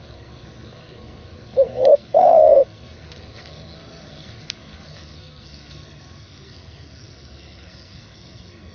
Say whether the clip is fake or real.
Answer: fake